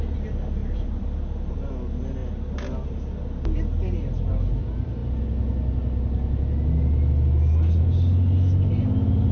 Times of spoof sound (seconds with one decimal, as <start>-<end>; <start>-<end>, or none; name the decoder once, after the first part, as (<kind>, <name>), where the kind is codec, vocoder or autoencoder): 0.6-1.7 (vocoder, BigVGAN v2)

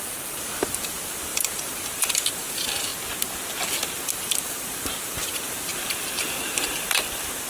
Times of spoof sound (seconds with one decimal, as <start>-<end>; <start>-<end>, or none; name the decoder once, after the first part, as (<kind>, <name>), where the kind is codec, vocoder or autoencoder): 0.0-2.9 (vocoder, BigVGAN v2); 4.1-7.5

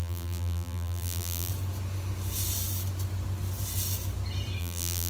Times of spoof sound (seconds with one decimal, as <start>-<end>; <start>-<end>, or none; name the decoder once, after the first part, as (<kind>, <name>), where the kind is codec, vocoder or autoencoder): 0.0-1.5 (vocoder, BigVGAN v2); 4.6-5.1

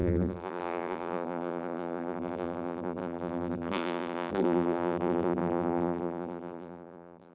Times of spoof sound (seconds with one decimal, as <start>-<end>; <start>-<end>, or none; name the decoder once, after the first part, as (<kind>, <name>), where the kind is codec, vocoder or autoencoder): 0.0-7.3 (vocoder, BigVGAN v2)

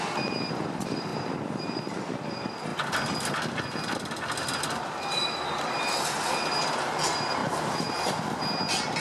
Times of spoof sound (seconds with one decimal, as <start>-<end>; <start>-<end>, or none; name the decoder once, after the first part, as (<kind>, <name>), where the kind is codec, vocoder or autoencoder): 0.0-1.1 (vocoder, BigVGAN v2); 1.6-2.7; 5.8-7.4

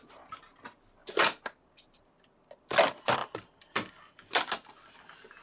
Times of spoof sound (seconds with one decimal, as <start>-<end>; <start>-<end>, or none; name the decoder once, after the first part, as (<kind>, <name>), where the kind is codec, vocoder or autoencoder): 1.0-2.7 (vocoder, BigVGAN v2); 3.2-4.5

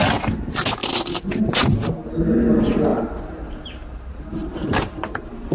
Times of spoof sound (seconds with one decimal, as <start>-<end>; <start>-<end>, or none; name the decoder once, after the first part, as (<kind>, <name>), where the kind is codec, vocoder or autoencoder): 2.9-5.5 (vocoder, BigVGAN v2)